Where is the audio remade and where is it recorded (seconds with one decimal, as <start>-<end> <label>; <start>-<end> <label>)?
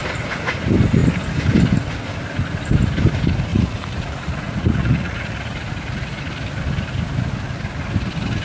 0.0-3.5 recorded; 3.5-6.2 remade; 6.2-8.4 recorded